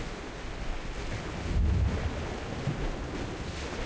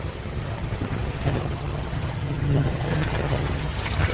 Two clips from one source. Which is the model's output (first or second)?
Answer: second